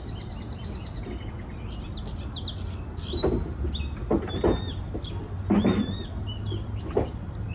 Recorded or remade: recorded